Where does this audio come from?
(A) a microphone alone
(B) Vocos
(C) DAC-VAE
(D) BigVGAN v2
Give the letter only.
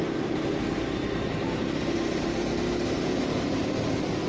D